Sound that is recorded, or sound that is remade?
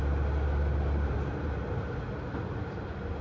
recorded